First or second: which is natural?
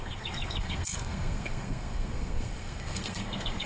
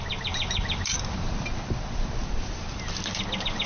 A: second